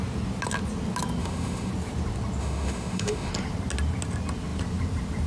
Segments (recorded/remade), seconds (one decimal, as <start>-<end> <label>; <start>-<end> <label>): 0.0-1.2 recorded; 1.2-1.7 remade; 1.7-2.4 recorded; 2.4-3.3 remade; 3.3-5.3 recorded